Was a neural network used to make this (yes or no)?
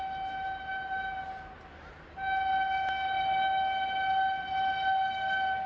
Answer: no